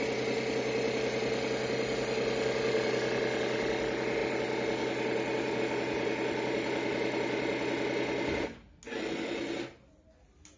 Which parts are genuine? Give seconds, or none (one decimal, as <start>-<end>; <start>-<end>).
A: 0.0-10.6